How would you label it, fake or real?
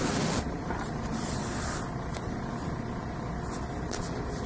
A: real